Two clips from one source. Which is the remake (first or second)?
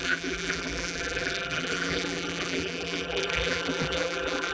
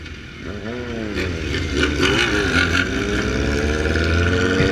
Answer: first